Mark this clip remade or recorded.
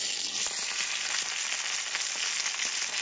recorded